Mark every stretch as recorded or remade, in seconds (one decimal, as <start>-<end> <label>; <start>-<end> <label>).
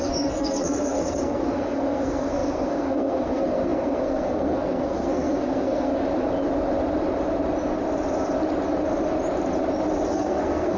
0.0-5.9 remade; 5.9-10.1 recorded; 10.1-10.8 remade